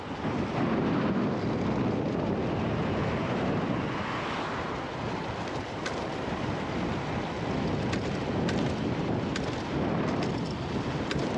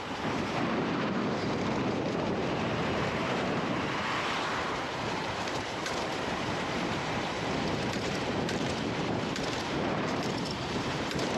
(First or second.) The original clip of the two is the first